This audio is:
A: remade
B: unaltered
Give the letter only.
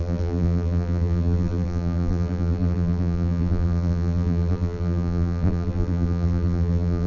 A